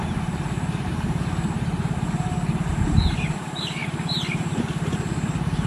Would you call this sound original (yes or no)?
no